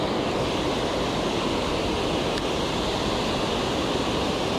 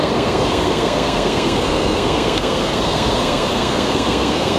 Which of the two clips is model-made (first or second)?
second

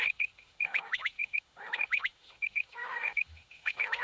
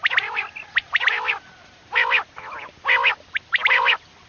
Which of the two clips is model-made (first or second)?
first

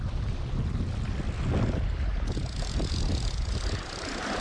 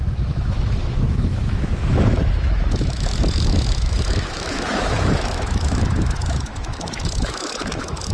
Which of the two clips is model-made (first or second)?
second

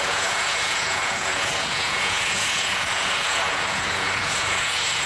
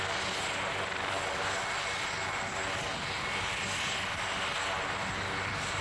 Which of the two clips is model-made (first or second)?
first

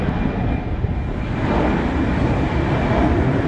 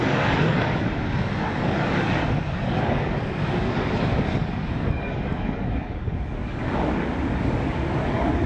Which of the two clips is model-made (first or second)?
second